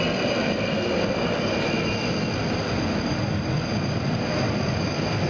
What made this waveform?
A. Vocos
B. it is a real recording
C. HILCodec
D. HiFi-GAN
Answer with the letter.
B